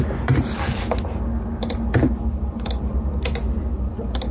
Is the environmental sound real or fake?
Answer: real